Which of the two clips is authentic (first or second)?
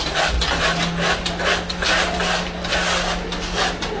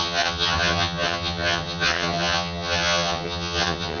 first